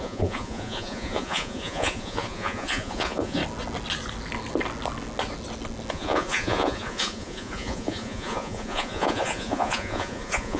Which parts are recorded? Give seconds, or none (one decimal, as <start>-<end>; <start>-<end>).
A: 3.4-5.9